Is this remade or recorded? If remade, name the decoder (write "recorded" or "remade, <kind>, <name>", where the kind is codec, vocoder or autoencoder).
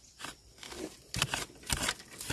recorded